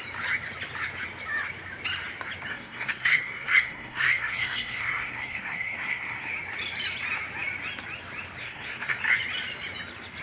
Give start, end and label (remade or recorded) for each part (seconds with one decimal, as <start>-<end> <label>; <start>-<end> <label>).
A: 0.0-2.5 recorded; 2.5-6.3 remade; 6.3-8.4 recorded; 8.4-9.0 remade; 9.0-10.2 recorded